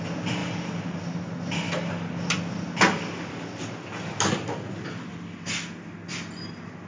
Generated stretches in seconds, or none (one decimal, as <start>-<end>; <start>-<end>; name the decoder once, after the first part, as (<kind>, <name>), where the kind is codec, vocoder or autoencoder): none

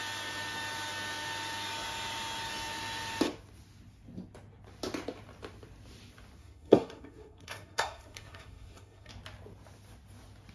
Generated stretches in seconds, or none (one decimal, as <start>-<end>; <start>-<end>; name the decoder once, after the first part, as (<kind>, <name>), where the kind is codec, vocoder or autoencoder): 6.4-9.1 (codec, SNAC)